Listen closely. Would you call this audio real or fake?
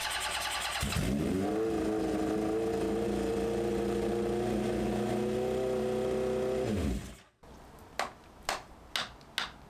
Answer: real